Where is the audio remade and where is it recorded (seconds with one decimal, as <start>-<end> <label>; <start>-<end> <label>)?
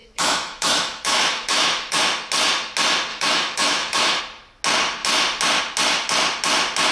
0.0-2.0 remade; 2.0-3.1 recorded; 3.1-4.2 remade; 4.2-6.9 recorded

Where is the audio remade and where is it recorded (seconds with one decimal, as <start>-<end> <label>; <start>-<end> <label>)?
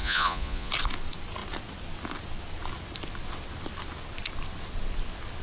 0.0-0.7 remade; 0.7-5.4 recorded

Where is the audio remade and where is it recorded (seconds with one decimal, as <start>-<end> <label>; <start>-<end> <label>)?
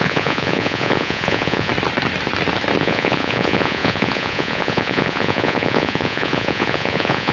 0.0-1.7 remade; 1.7-2.8 recorded; 2.8-7.3 remade